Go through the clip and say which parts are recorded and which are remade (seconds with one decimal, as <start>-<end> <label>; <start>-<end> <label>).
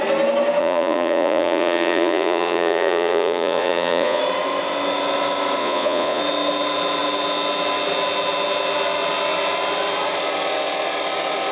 0.0-0.6 recorded; 0.6-4.2 remade; 4.2-5.6 recorded; 5.6-6.2 remade; 6.2-11.5 recorded